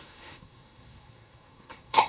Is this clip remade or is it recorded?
remade